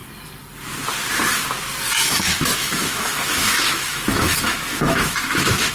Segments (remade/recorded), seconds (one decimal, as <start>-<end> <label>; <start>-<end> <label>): 0.0-1.9 recorded; 1.9-5.7 remade